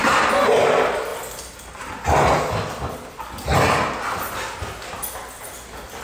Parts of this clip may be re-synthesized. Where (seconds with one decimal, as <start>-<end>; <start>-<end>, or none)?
none